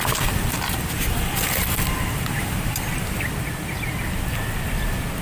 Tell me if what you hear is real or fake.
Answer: real